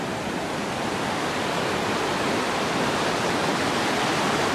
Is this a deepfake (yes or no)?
no